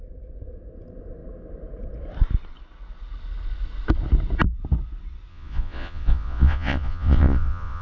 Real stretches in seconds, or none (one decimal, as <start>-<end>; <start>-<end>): 0.0-5.3